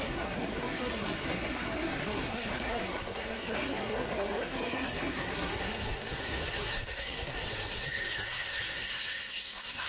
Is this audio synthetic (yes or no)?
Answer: yes